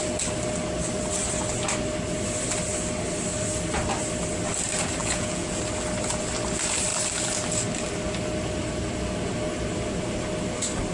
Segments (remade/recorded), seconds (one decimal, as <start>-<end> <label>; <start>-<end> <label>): 0.0-5.0 recorded; 5.0-5.6 remade; 5.6-10.9 recorded